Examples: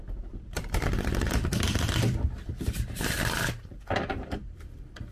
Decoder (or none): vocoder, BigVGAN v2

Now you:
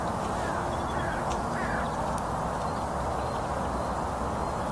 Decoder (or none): none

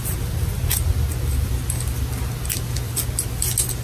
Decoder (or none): none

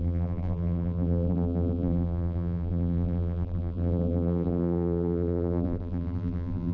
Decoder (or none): vocoder, BigVGAN v2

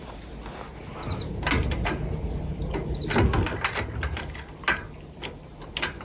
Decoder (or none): none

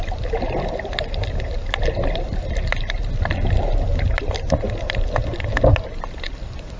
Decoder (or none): none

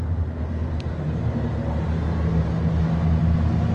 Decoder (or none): none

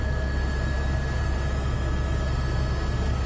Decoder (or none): none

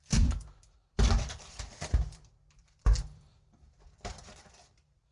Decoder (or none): vocoder, BigVGAN v2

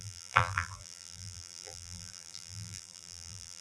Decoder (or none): vocoder, BigVGAN v2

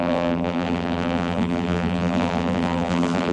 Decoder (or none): vocoder, BigVGAN v2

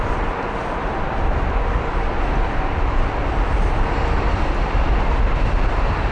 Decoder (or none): vocoder, BigVGAN v2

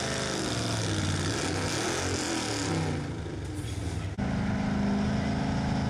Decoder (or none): none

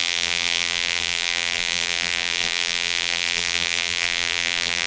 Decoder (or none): vocoder, BigVGAN v2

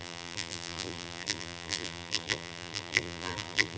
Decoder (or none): vocoder, BigVGAN v2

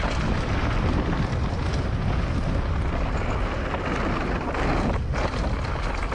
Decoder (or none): none